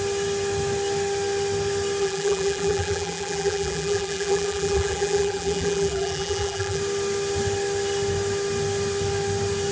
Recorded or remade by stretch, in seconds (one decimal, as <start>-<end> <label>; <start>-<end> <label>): 0.0-2.0 recorded; 2.0-6.8 remade; 6.8-9.7 recorded